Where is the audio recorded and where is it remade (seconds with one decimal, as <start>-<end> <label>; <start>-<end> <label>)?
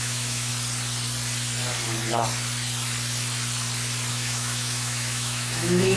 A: 0.0-0.5 remade; 0.5-4.1 recorded; 4.1-6.0 remade